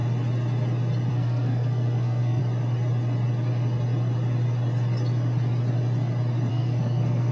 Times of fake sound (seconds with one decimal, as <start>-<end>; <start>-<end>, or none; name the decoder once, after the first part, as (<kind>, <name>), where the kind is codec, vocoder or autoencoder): 1.1-2.4 (codec, SNAC); 6.5-7.3